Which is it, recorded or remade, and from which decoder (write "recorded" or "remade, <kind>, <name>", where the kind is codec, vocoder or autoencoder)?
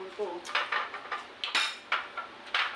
recorded